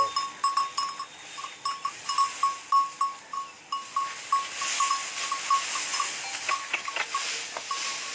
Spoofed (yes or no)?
no